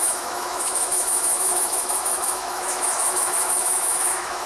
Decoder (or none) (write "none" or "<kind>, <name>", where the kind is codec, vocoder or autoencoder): autoencoder, DAC-VAE